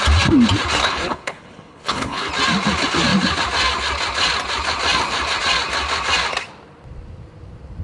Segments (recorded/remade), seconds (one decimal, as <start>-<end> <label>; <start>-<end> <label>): 0.0-0.8 recorded; 0.8-2.3 remade; 2.3-7.8 recorded